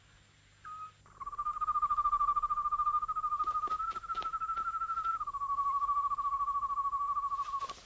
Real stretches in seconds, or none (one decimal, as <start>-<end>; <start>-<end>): 0.0-7.9